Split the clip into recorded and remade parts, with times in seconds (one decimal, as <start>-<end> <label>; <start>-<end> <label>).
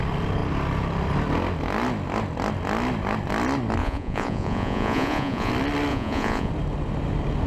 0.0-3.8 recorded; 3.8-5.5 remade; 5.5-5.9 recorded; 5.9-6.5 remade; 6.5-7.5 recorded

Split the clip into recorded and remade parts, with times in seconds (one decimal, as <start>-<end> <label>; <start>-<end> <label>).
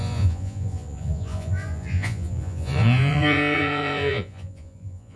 0.0-5.2 remade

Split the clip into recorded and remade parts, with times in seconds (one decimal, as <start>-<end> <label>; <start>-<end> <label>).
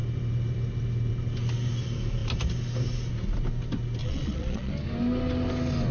0.0-4.0 recorded; 4.0-4.7 remade; 4.7-5.9 recorded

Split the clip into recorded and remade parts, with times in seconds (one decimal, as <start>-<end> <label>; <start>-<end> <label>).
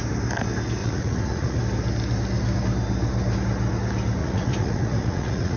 0.0-0.8 recorded; 0.8-1.6 remade; 1.6-4.2 recorded; 4.2-5.6 remade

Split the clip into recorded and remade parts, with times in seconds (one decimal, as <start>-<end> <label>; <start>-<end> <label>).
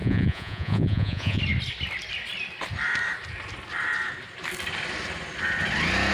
0.0-1.4 remade; 1.4-6.1 recorded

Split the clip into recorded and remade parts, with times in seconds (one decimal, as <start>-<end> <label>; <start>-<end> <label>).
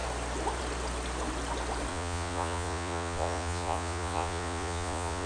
0.0-1.9 recorded; 1.9-5.3 remade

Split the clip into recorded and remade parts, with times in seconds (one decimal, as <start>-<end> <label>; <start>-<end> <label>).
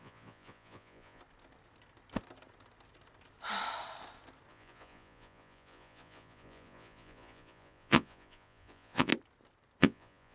0.0-1.2 remade; 1.2-4.5 recorded; 4.5-9.1 remade; 9.1-9.8 recorded; 9.8-10.3 remade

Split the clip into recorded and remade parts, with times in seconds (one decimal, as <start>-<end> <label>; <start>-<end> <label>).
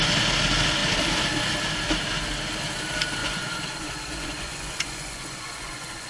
0.0-3.2 recorded; 3.2-6.1 remade